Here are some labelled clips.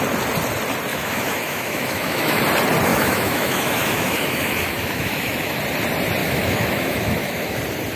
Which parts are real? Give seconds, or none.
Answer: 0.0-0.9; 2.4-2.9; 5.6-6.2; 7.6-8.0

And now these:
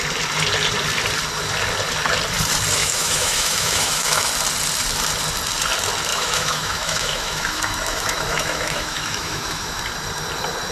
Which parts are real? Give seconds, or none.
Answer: 0.0-2.8; 4.3-6.1; 9.8-10.7

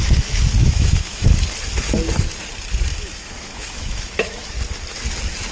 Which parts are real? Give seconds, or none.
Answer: 0.0-0.6; 1.3-2.9; 4.5-5.5

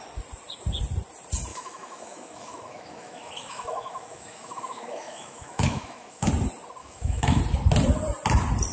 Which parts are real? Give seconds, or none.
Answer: 0.0-1.5; 6.3-6.8; 7.4-8.7